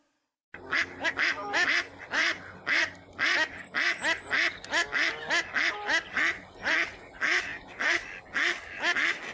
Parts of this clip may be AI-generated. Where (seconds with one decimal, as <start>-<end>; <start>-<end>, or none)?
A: none